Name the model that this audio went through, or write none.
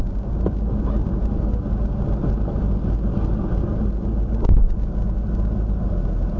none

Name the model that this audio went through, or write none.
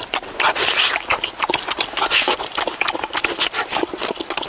none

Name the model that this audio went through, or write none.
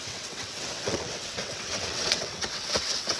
vocoder, WaveNeXt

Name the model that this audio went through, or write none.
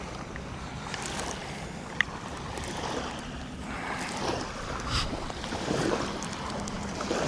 none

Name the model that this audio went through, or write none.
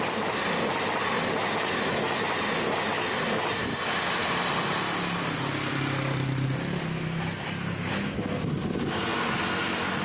none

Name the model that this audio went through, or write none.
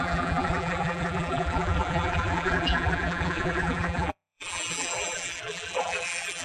vocoder, BigVGAN v2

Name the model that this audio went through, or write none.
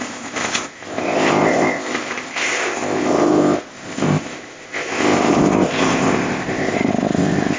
codec, ZipCodec